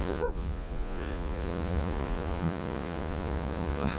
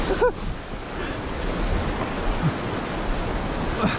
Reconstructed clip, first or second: first